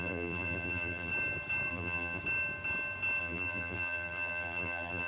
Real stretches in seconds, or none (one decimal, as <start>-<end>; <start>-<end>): 1.1-1.7; 2.2-3.2